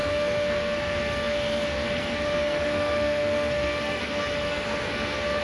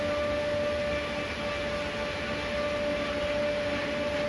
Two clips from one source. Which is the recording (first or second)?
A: second